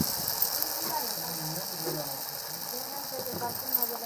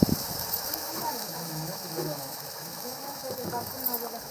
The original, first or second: first